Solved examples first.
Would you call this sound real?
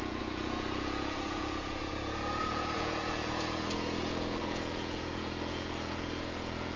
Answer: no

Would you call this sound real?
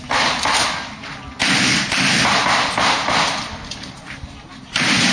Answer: yes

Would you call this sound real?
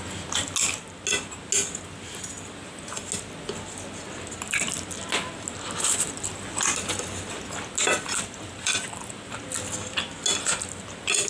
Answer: yes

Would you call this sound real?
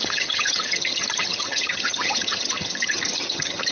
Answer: no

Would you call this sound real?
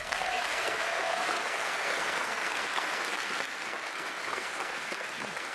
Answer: no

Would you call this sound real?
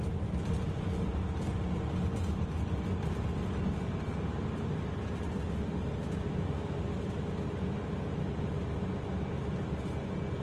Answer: yes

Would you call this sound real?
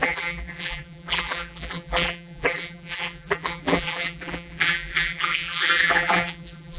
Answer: no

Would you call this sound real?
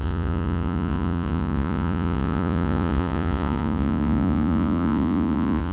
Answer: no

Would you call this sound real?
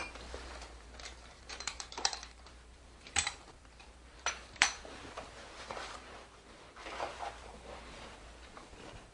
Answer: no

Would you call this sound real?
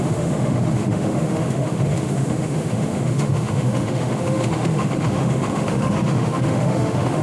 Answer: no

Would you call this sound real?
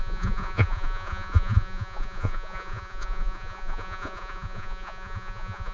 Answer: no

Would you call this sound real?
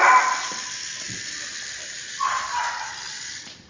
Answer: yes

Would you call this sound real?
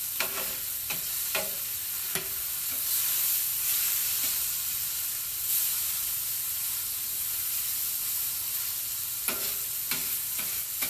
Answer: yes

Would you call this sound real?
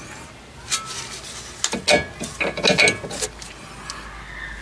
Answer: yes